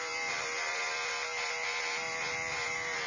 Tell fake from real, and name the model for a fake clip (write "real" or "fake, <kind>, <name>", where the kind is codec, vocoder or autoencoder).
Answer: fake, vocoder, BigVGAN v2